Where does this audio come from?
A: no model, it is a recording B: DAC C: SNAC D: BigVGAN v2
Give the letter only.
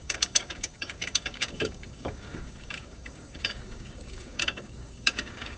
B